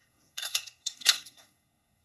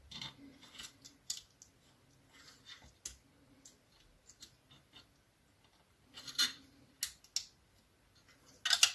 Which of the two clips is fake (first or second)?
first